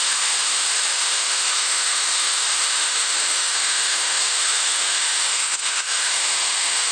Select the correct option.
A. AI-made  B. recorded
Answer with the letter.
A